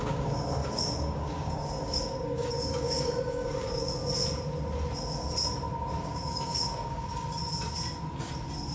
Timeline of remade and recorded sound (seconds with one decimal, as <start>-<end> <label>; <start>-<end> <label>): 0.0-4.0 remade; 4.0-6.0 recorded; 6.0-7.1 remade; 7.1-8.7 recorded